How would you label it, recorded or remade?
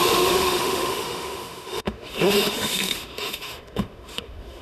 remade